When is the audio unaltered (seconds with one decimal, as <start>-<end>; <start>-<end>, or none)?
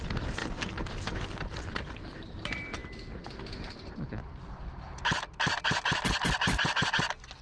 0.0-7.4